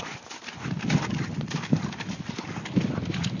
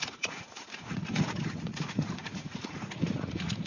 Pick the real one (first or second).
first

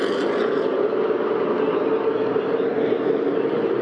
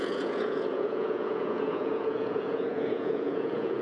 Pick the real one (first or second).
first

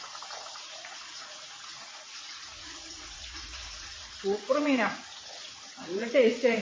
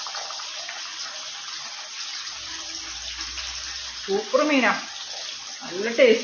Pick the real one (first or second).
second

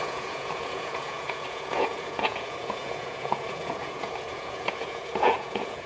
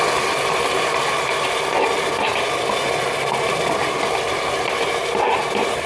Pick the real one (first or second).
second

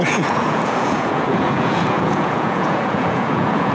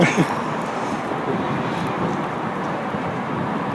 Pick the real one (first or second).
second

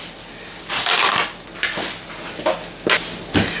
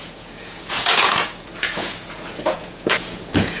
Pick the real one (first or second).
first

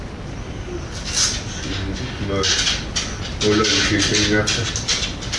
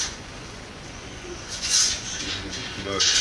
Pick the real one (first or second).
first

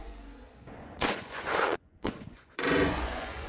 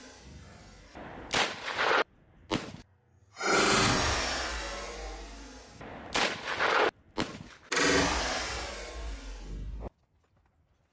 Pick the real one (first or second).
second